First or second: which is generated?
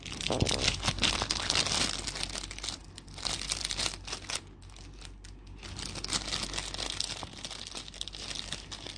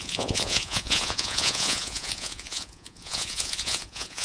second